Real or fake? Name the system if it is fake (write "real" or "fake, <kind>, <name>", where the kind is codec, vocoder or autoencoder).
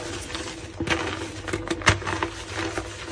real